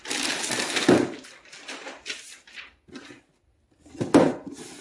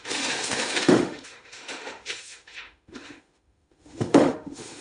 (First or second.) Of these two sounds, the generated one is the second